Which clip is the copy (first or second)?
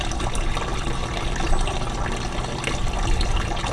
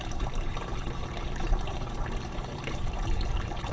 second